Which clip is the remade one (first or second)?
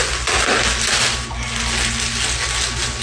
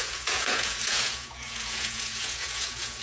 second